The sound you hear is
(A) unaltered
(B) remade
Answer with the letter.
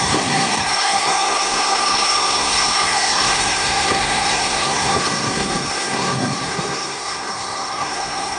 B